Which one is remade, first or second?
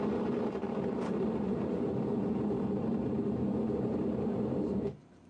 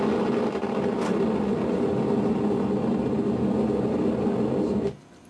first